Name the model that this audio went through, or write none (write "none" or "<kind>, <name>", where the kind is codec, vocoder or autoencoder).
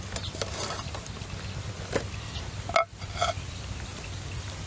none